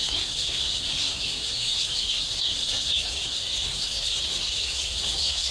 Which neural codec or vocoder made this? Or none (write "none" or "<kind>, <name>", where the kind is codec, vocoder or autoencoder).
codec, SNAC